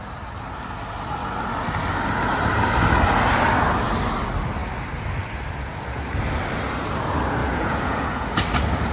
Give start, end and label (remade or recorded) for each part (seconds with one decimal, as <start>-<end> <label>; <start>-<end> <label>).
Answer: 0.0-7.4 recorded; 7.4-8.3 remade; 8.3-8.9 recorded